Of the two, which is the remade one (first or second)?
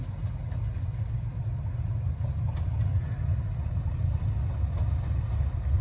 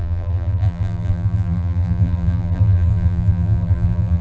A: second